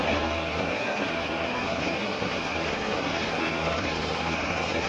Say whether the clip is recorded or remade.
remade